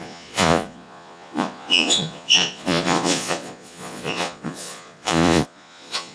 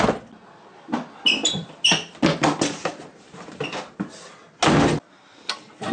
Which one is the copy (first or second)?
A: first